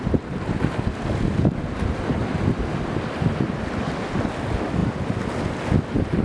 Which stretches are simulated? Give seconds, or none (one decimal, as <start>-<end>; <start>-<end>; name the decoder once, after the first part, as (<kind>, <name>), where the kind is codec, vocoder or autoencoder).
none